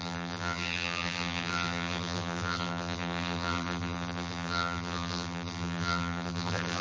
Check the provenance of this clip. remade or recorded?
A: remade